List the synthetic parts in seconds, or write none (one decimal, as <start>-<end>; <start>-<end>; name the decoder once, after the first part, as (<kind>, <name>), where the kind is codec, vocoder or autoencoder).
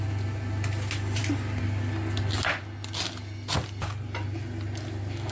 none